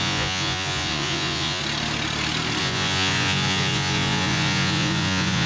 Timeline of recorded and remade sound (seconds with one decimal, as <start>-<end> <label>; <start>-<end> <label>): 0.0-1.6 remade; 1.6-2.6 recorded; 2.6-5.5 remade